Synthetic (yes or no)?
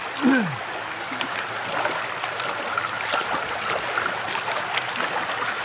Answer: no